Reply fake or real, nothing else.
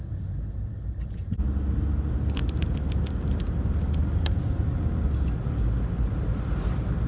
real